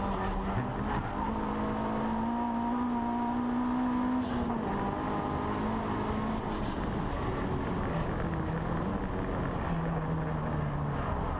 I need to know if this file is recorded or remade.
recorded